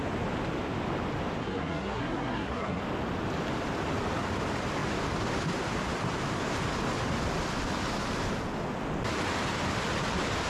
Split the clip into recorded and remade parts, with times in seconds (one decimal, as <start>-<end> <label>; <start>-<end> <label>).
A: 0.0-1.4 recorded; 1.4-2.8 remade; 2.8-10.5 recorded